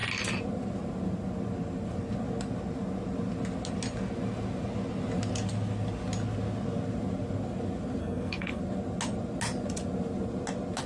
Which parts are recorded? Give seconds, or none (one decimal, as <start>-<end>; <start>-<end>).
0.0-8.0; 8.6-10.9